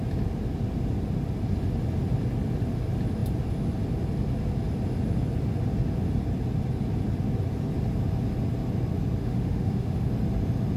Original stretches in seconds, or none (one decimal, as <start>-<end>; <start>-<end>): 0.0-9.2; 10.1-10.8